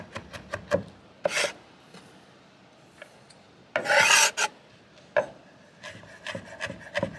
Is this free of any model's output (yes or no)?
yes